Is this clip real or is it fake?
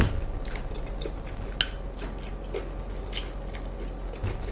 real